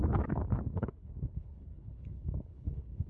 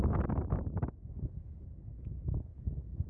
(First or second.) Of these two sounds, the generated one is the first